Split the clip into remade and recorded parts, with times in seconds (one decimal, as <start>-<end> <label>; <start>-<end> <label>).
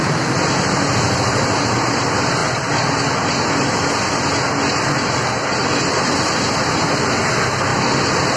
0.0-8.4 recorded